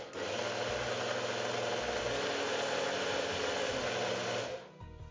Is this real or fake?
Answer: real